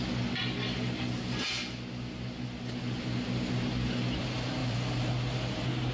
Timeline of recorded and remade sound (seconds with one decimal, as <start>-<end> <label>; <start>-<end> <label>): 0.0-4.6 recorded; 4.6-5.1 remade; 5.1-5.9 recorded